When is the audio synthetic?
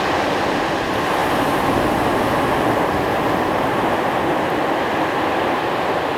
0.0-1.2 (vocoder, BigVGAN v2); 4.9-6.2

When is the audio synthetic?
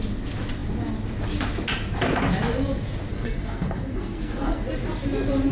3.1-4.6 (codec, SNAC)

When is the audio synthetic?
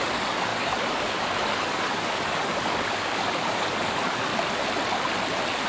0.0-4.3 (codec, DAC)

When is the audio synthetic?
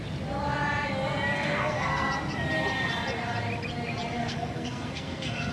1.3-2.1 (codec, SNAC); 4.2-5.5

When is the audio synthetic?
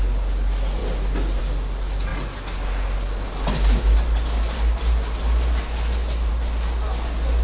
none